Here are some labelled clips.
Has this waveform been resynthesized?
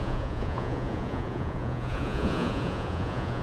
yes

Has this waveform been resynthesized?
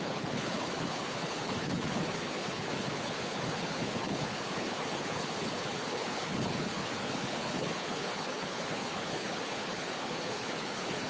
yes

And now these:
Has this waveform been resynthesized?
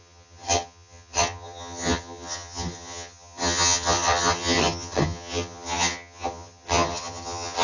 yes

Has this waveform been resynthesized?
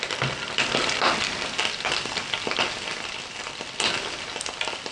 no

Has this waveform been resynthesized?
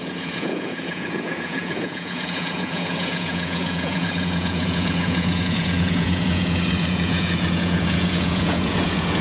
yes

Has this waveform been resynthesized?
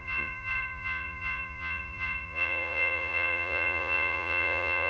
yes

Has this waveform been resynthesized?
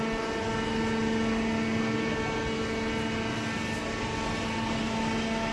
no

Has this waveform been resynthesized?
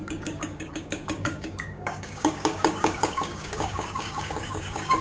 yes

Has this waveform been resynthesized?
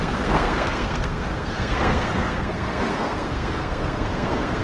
yes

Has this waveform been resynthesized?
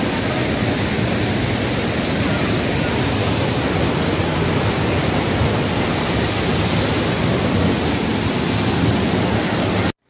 no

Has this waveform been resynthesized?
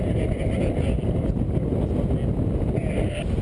no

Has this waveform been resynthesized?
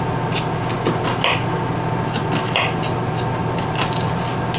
no